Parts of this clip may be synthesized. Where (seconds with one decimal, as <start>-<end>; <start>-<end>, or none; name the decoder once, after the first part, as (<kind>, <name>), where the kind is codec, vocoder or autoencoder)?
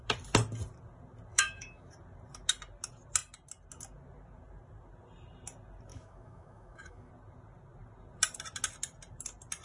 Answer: 1.3-1.9 (autoencoder, DAC-VAE); 5.9-7.1